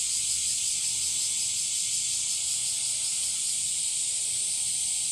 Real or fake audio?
real